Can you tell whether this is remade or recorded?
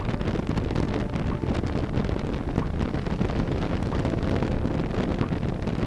recorded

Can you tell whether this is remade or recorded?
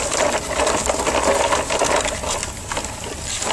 recorded